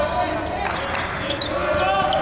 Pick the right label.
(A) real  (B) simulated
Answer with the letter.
A